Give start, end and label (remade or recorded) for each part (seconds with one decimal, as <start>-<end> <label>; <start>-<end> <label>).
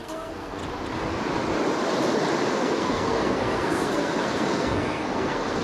0.0-0.6 remade; 0.6-2.5 recorded; 2.5-5.6 remade